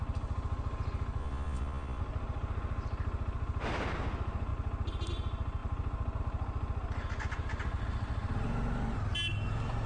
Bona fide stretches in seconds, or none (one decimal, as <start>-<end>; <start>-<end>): 0.0-1.2; 2.0-9.9